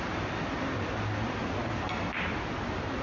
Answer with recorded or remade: recorded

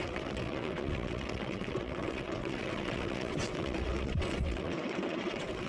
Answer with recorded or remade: remade